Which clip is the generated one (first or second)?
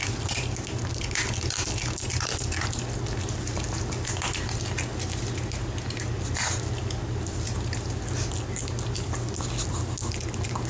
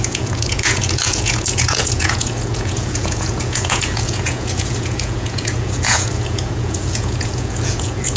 second